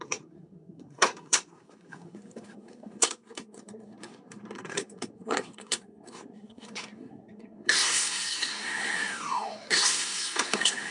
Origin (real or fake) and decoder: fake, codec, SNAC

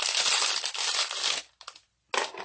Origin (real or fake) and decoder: real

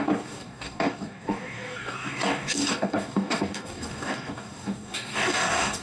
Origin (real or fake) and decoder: fake, codec, DAC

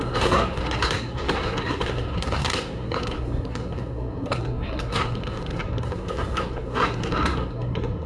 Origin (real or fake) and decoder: fake, codec, SNAC